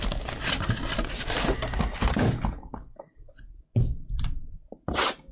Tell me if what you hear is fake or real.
real